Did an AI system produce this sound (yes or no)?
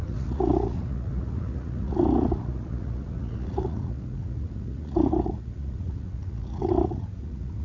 yes